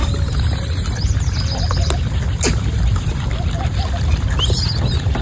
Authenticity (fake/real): real